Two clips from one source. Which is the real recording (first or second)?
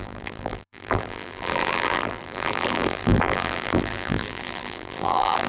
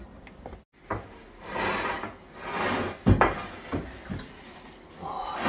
second